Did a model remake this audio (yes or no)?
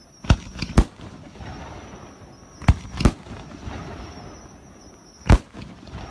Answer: no